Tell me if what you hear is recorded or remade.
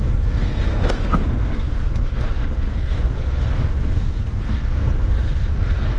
remade